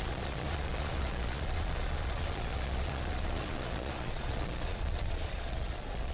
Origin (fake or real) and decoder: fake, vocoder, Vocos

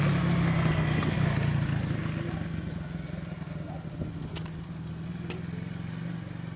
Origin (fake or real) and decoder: real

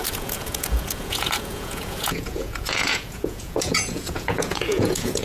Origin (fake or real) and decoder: fake, vocoder, Vocos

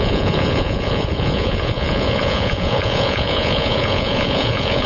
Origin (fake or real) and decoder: fake, vocoder, Vocos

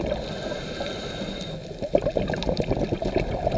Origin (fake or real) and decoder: real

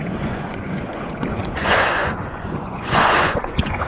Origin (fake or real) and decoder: fake, vocoder, Vocos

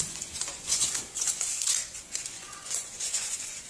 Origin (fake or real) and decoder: fake, vocoder, Vocos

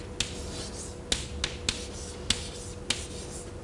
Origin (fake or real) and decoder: real